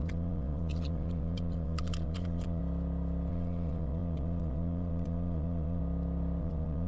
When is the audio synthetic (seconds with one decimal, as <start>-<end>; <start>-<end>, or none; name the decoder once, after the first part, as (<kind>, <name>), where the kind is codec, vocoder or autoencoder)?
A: 0.0-2.6 (vocoder, Vocos); 3.3-5.8; 6.4-6.9